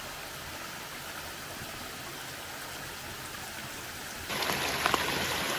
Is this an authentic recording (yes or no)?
yes